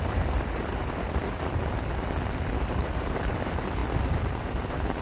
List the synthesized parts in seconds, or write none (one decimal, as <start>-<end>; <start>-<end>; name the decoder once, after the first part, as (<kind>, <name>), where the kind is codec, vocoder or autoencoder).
0.0-1.2 (vocoder, BigVGAN v2); 2.7-3.8; 4.4-5.0